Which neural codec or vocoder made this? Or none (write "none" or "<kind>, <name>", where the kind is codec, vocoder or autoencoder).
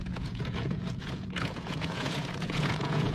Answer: vocoder, Vocos